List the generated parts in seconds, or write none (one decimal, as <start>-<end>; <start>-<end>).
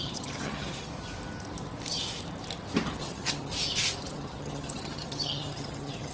0.0-0.9; 3.0-3.5; 4.1-6.1